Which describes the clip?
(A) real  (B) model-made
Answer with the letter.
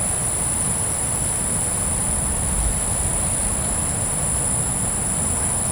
A